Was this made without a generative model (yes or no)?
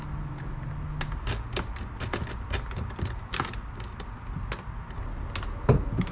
yes